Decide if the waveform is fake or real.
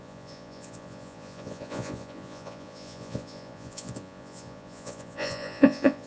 fake